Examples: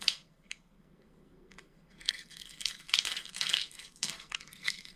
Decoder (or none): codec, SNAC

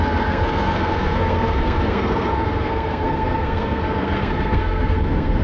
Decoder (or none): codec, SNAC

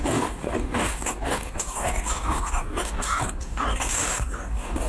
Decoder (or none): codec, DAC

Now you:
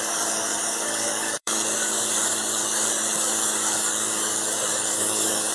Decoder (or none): codec, DAC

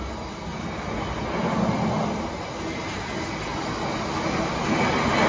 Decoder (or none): none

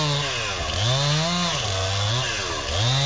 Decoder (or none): none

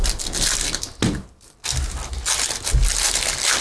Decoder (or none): none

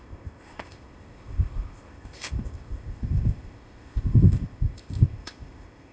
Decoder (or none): codec, ZipCodec